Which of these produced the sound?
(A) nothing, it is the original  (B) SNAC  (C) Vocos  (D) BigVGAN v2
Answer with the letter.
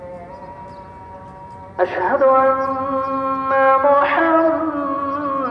A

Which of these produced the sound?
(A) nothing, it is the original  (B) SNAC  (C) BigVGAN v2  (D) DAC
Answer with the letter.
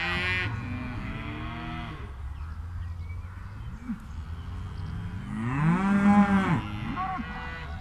A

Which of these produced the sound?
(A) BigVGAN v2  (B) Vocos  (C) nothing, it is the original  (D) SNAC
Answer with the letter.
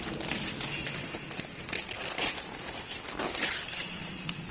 C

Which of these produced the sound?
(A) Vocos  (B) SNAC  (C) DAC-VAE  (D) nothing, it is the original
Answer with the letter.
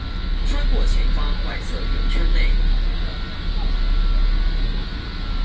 D